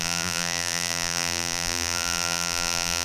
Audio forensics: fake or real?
fake